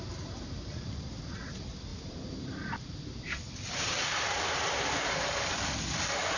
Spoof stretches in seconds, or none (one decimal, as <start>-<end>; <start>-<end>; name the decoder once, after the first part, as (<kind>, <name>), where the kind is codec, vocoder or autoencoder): 1.9-5.7 (vocoder, BigVGAN v2)